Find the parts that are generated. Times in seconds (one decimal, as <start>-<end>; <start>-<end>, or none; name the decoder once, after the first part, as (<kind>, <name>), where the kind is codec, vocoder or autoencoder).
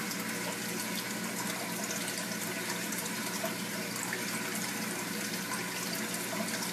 2.2-5.5 (vocoder, BigVGAN v2)